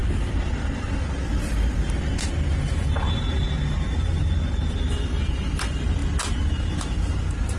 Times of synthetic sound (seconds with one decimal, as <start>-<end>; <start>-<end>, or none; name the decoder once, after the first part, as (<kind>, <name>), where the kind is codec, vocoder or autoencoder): none

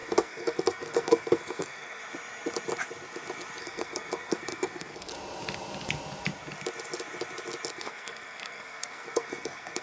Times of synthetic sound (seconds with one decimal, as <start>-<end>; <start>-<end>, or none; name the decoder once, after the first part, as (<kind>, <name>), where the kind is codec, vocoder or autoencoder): 0.0-2.0 (codec, SNAC); 3.6-5.1; 7.7-9.8

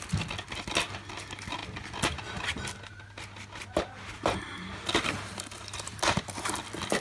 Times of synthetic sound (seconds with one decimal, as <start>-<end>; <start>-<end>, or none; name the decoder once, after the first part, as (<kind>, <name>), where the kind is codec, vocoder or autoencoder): none

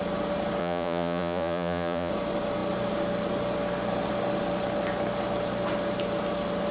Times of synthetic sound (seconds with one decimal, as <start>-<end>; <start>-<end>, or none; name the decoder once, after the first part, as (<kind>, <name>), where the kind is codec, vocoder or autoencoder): 0.6-2.1 (vocoder, Vocos)

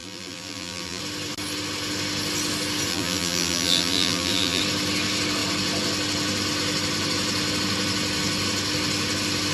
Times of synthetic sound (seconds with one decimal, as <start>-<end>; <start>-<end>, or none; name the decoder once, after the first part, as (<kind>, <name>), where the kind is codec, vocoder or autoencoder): 0.0-1.0 (vocoder, BigVGAN v2); 2.9-4.6

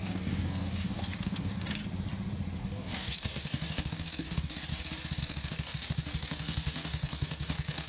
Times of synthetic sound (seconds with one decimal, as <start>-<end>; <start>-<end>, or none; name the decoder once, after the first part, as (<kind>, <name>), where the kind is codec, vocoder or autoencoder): 0.0-1.8 (codec, DAC); 2.6-4.7; 5.2-7.9

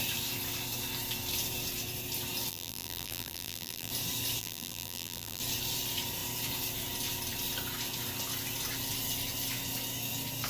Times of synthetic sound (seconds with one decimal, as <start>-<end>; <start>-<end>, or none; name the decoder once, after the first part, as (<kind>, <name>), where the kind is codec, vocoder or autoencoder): 2.5-3.9 (vocoder, BigVGAN v2); 4.4-5.4

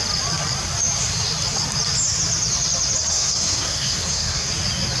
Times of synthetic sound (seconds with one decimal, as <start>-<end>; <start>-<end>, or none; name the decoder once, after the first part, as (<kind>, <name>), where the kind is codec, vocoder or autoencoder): 3.1-4.5 (codec, SNAC)